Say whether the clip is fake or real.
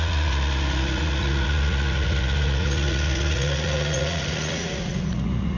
fake